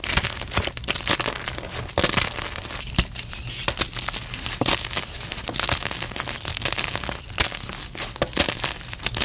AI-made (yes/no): no